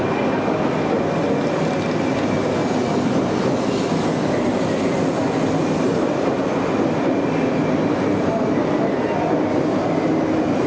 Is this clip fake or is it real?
real